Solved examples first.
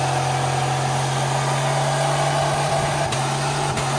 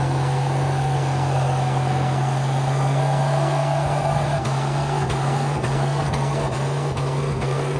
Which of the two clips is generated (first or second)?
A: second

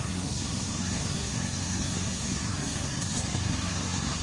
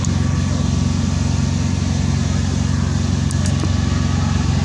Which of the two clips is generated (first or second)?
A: first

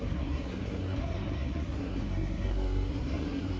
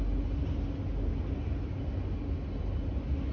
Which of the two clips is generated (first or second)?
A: first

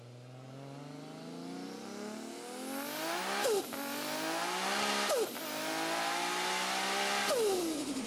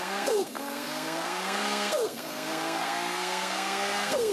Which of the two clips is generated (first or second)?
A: second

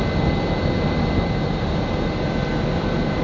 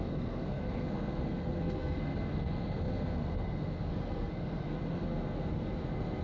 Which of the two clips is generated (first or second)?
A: second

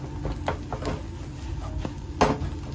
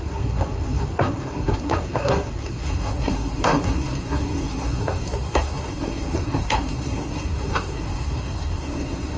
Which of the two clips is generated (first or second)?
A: second